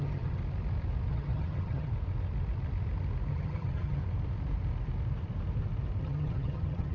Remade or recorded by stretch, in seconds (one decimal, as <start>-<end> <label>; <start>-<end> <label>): 0.0-0.4 remade; 0.4-1.1 recorded; 1.1-1.9 remade; 1.9-3.3 recorded; 3.3-4.0 remade; 4.0-6.0 recorded; 6.0-6.9 remade